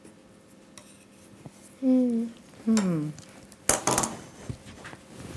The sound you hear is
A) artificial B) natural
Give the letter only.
B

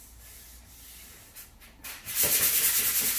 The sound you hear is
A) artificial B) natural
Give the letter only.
B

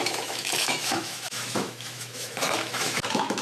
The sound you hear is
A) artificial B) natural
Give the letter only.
A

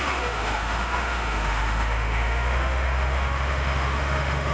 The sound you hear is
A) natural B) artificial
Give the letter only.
B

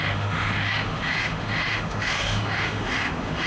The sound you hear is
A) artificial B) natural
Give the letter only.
A